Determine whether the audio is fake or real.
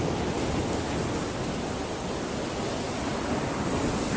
real